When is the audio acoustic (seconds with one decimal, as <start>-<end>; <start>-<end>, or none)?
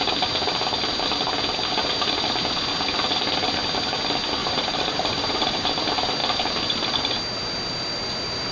0.0-4.4; 5.7-8.5